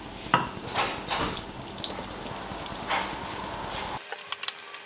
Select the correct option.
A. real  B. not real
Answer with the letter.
A